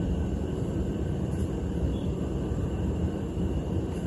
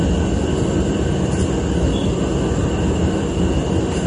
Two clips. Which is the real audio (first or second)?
second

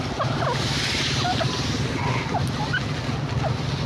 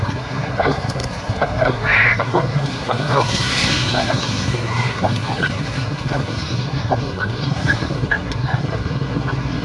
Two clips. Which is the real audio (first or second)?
first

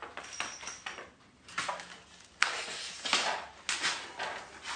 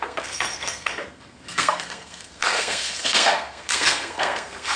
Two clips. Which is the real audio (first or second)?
first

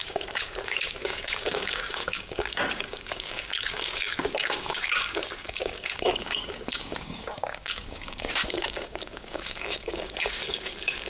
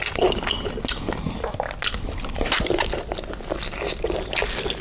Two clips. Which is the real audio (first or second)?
second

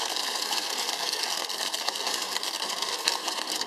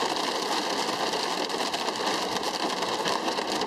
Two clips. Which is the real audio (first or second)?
second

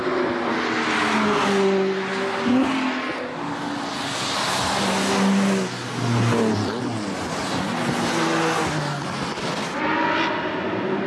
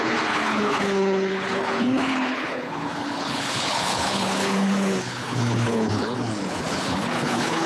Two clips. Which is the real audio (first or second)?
first